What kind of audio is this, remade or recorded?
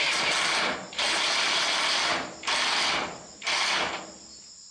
recorded